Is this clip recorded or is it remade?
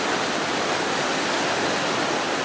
recorded